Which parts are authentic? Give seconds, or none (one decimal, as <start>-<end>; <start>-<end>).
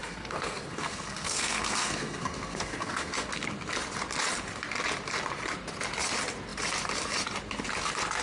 3.3-8.2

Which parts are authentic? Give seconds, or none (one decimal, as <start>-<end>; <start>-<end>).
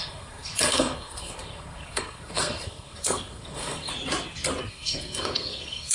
3.9-4.7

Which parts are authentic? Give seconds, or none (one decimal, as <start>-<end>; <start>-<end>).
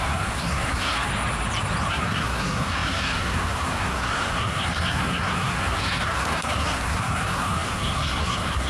1.1-1.9